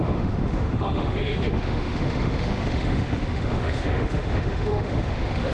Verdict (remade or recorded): remade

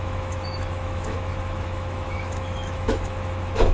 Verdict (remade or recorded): remade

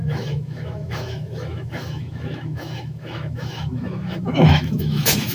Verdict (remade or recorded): remade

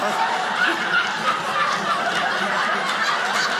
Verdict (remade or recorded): recorded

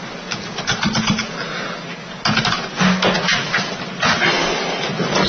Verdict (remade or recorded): recorded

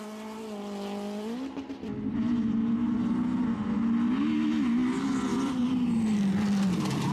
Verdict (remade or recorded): recorded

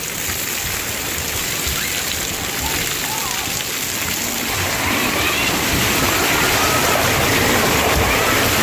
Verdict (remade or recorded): recorded